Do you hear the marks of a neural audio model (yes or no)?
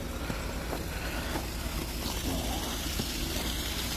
no